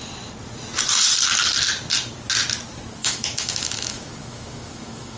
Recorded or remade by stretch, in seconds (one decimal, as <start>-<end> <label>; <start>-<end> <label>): 0.0-3.0 recorded; 3.0-5.2 remade